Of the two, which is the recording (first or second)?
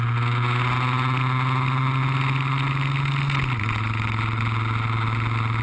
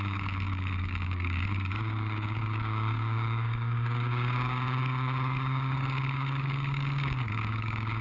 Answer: first